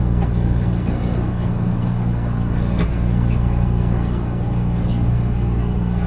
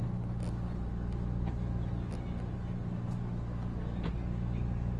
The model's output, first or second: first